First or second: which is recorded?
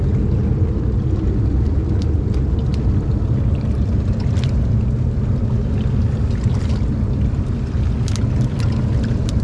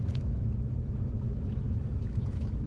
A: first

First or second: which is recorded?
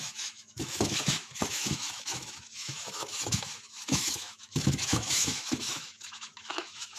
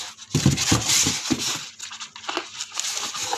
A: second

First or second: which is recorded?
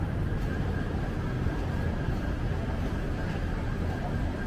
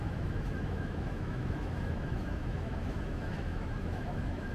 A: first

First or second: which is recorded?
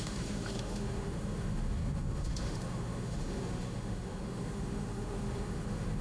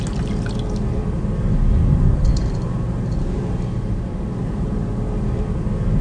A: second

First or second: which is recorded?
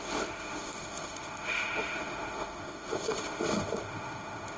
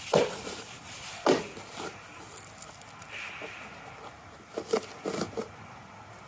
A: second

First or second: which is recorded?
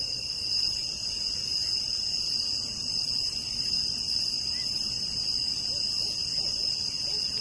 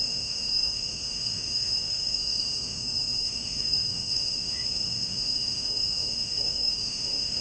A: first